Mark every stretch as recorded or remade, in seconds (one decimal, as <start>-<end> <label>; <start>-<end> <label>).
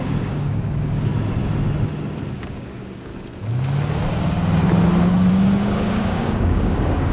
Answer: 0.0-1.1 remade; 1.1-2.3 recorded; 2.3-3.1 remade; 3.1-5.3 recorded; 5.3-7.1 remade